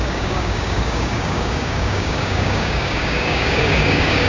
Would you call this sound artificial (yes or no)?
yes